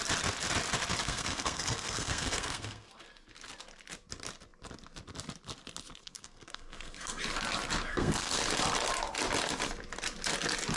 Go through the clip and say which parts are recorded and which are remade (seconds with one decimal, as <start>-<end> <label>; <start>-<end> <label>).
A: 0.0-1.0 recorded; 1.0-2.9 remade; 2.9-6.0 recorded; 6.0-7.2 remade; 7.2-7.9 recorded; 7.9-8.4 remade; 8.4-10.8 recorded